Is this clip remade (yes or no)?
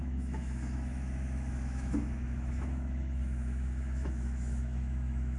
yes